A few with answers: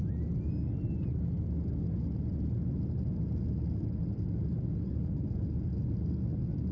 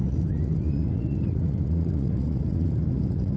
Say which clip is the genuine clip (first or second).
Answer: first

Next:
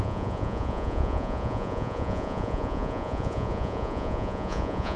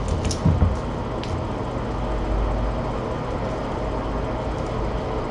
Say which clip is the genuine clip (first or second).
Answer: second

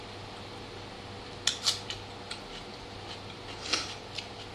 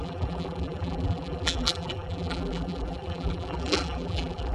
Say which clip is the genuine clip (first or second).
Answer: first